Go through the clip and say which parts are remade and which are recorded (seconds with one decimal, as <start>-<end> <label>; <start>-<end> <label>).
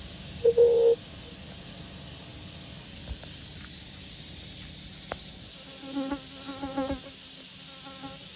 0.0-8.4 recorded